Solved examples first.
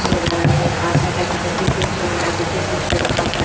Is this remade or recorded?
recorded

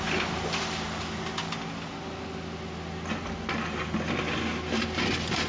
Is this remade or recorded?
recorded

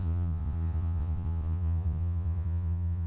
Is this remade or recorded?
remade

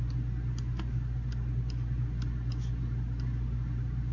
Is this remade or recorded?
recorded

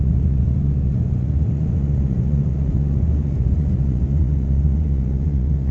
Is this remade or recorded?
remade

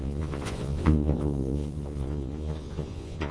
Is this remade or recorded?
remade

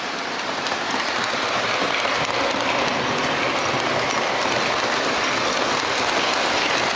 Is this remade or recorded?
recorded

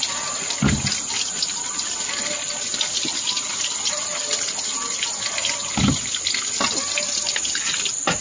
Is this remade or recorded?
recorded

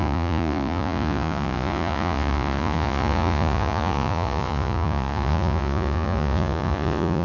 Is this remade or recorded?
remade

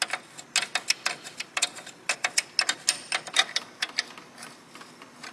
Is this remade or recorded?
recorded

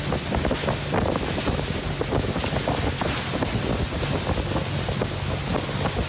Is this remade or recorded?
recorded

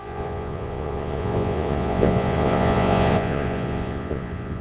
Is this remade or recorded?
remade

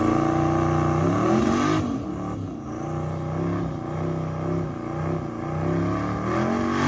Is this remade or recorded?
recorded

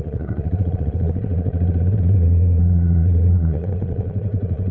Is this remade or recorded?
remade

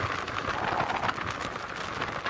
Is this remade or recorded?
recorded